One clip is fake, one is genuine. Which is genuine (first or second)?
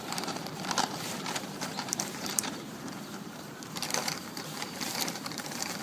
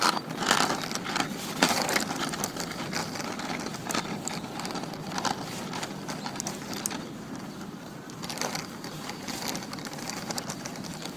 second